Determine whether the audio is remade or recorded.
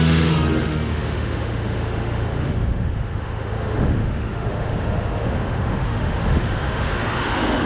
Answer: remade